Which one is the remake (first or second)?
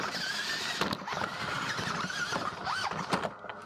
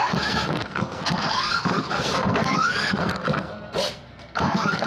second